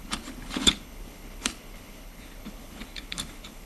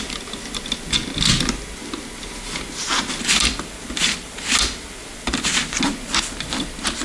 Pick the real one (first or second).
second